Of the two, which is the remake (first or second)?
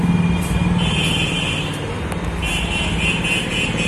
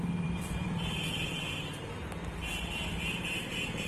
second